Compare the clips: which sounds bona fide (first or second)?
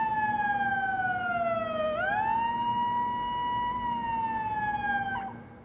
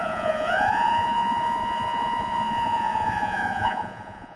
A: first